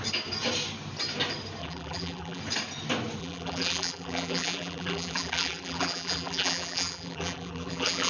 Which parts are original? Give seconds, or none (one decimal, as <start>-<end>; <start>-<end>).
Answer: 0.0-1.6; 2.4-3.2